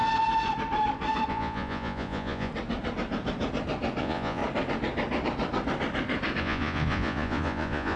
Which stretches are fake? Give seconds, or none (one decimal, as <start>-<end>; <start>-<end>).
1.3-2.5; 4.0-4.4; 6.4-8.0